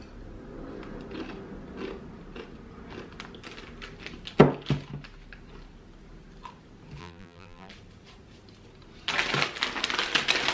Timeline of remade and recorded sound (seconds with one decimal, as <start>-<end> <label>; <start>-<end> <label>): 0.0-7.0 recorded; 7.0-7.7 remade; 7.7-10.5 recorded